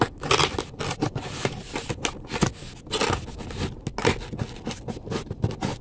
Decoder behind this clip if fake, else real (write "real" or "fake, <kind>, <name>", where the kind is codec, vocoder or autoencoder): real